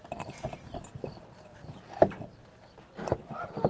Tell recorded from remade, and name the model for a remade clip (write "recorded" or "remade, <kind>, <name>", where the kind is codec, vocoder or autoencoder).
recorded